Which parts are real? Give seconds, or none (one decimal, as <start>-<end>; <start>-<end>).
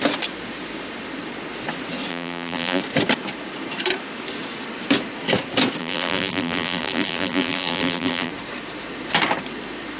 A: 0.0-2.1; 2.8-5.8; 8.3-10.0